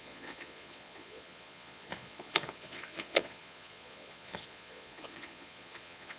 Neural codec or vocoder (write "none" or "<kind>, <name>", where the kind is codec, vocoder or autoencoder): vocoder, Vocos